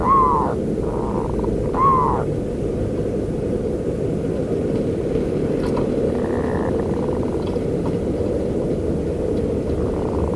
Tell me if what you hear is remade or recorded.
recorded